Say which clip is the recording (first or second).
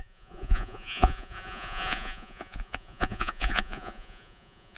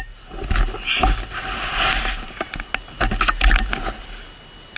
second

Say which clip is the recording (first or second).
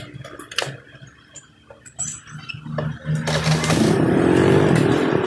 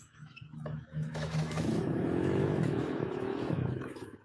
first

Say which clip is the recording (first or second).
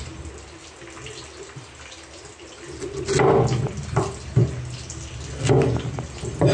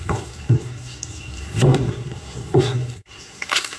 first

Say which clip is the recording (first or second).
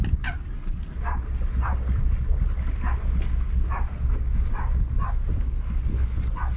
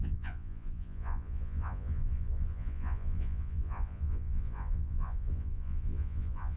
first